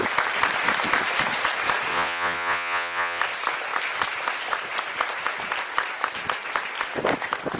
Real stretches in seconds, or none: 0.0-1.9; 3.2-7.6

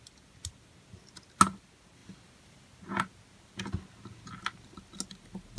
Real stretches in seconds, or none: 0.0-5.6

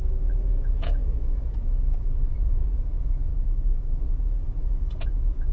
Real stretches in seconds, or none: 3.3-4.0

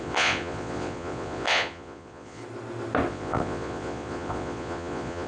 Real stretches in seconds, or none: 2.4-3.1

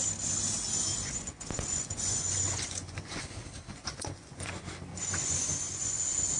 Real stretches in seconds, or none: 0.0-0.9; 3.2-3.7; 4.5-4.9; 6.0-6.4

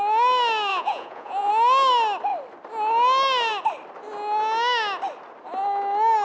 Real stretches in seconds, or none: 0.0-0.7; 1.5-6.2